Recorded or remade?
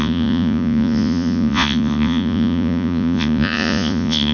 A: remade